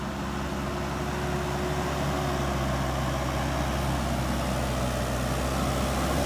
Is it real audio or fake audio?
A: real